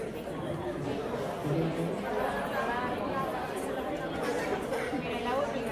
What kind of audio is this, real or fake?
real